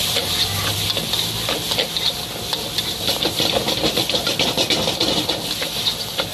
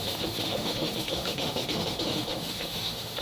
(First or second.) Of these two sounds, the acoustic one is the first